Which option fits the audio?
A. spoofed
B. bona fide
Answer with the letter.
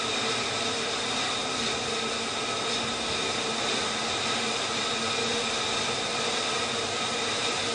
B